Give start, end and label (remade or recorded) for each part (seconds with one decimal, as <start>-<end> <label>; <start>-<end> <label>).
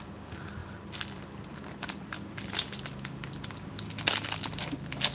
0.0-5.1 recorded